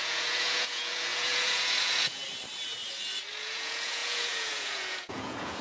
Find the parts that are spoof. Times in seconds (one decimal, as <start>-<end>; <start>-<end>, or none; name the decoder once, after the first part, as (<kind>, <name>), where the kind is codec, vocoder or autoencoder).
0.0-2.2 (vocoder, Vocos); 3.3-5.6